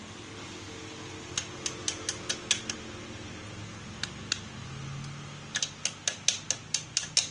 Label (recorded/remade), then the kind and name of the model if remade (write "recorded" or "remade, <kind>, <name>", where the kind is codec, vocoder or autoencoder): recorded